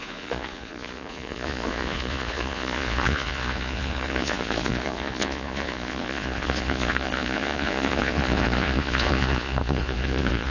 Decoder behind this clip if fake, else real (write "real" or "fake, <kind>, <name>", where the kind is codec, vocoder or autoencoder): fake, vocoder, Vocos